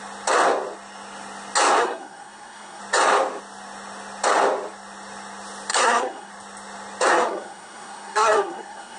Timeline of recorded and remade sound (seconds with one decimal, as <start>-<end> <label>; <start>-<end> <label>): 0.0-1.8 recorded; 1.8-2.8 remade; 2.8-5.7 recorded; 5.7-6.3 remade; 6.3-7.1 recorded; 7.1-9.0 remade